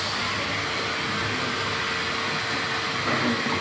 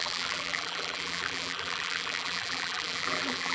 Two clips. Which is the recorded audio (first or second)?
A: first